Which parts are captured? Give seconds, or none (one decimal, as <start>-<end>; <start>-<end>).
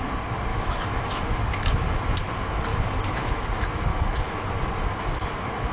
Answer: 0.0-0.5; 1.2-2.7; 3.4-3.9; 4.5-5.7